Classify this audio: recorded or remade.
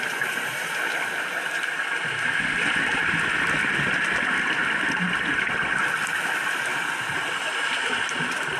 recorded